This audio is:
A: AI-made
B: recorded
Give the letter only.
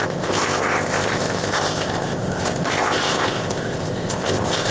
A